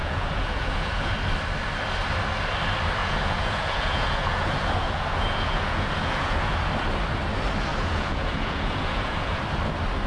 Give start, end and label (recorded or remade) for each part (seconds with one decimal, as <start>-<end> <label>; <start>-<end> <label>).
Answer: 0.0-1.1 remade; 1.1-3.0 recorded; 3.0-6.7 remade; 6.7-7.7 recorded; 7.7-9.4 remade; 9.4-10.1 recorded